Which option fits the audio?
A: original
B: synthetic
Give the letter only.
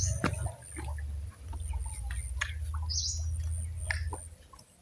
A